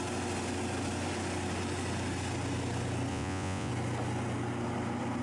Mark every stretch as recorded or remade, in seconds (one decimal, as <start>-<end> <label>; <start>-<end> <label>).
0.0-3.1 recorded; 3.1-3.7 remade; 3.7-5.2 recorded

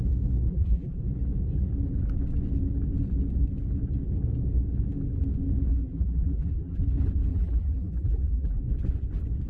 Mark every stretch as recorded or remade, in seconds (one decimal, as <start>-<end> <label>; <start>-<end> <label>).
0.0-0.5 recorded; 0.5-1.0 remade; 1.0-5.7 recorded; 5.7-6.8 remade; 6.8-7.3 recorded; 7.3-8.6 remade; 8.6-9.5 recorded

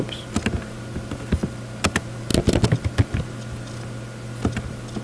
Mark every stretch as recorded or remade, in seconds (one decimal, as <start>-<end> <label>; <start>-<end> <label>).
0.0-5.0 recorded

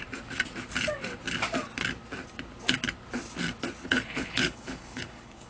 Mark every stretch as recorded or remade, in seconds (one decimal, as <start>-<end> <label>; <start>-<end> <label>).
0.0-3.8 recorded; 3.8-5.5 remade

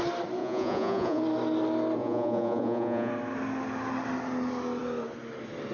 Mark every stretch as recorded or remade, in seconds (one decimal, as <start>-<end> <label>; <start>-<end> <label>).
0.0-0.4 recorded; 0.4-1.2 remade; 1.2-2.0 recorded; 2.0-3.1 remade; 3.1-5.7 recorded

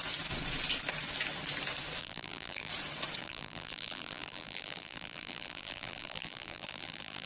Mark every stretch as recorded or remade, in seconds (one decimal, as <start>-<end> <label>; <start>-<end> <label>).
0.0-2.0 recorded; 2.0-2.7 remade; 2.7-3.2 recorded; 3.2-7.3 remade